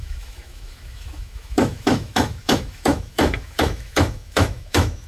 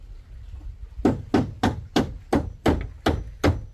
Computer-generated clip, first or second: first